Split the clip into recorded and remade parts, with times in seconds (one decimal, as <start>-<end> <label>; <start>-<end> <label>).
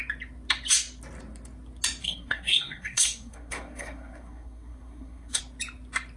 0.0-2.0 recorded; 2.0-5.4 remade; 5.4-6.2 recorded